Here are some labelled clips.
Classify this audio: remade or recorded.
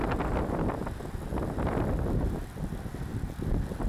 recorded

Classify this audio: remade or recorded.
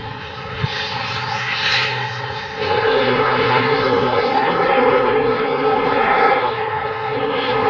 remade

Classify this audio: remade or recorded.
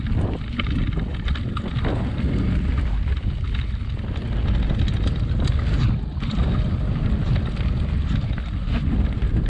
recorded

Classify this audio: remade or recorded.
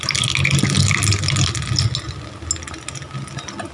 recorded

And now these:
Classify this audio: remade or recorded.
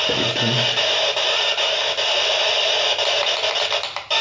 recorded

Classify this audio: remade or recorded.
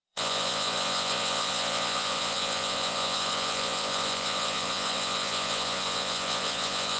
remade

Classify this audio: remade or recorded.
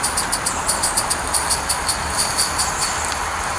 recorded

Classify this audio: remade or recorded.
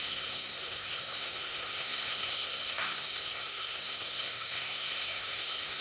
remade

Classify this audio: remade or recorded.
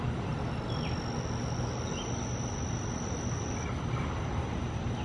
recorded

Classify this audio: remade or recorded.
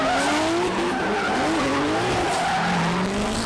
recorded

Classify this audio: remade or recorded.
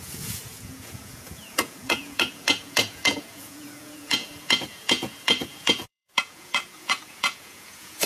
remade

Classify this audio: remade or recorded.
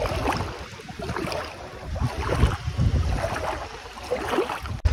recorded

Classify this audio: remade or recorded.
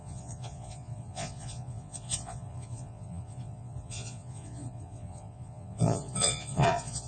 remade